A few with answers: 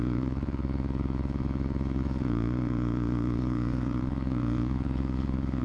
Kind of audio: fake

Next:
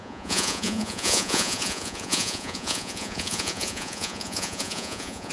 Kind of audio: fake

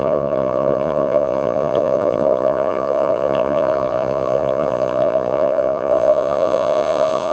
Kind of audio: fake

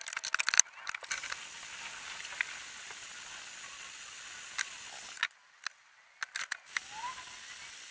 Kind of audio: real